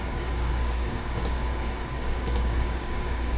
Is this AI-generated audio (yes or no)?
yes